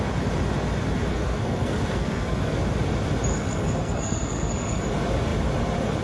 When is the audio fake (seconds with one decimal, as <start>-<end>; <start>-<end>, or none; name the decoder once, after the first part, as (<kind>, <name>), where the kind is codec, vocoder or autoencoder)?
1.1-2.6 (codec, SNAC); 3.3-4.8